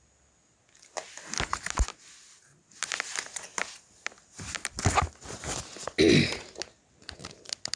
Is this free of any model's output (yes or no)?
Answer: yes